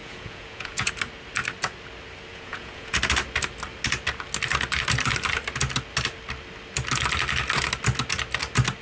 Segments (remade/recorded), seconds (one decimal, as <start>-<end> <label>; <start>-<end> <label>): 0.0-0.9 remade; 0.9-2.3 recorded; 2.3-3.0 remade; 3.0-8.8 recorded